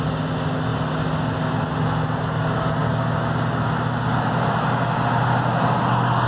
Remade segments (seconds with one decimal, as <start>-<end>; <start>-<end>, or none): none